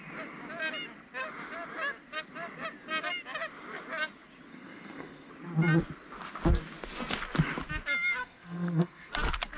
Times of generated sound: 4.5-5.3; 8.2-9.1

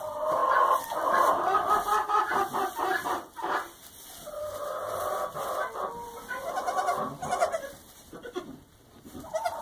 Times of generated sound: none

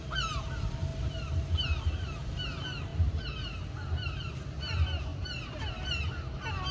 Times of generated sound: 0.9-2.3; 2.9-4.3; 5.1-5.7

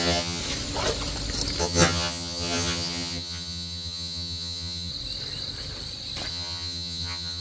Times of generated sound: 0.0-0.4; 1.6-4.9; 6.3-7.4